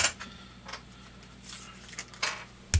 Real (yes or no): yes